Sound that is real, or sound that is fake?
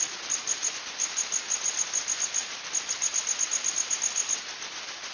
real